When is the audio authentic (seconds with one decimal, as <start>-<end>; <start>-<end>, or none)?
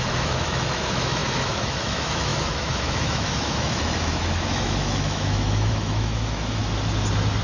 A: 6.6-7.4